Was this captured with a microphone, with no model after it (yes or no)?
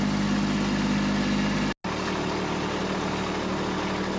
yes